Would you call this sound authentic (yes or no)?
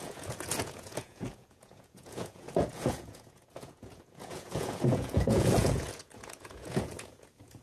no